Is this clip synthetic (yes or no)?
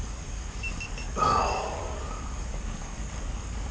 yes